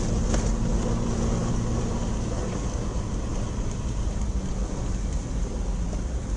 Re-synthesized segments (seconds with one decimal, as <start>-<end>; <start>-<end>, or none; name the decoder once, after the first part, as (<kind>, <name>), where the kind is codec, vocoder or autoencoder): 3.3-4.4 (vocoder, BigVGAN v2)